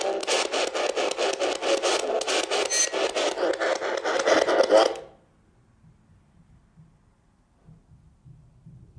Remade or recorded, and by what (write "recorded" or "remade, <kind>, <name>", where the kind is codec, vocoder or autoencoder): recorded